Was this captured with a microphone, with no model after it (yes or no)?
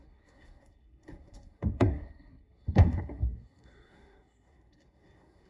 no